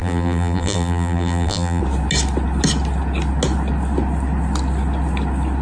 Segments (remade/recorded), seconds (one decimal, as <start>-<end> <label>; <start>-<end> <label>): 0.0-1.8 remade; 1.8-5.6 recorded